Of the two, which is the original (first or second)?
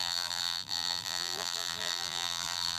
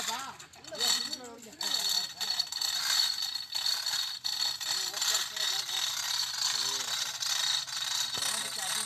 second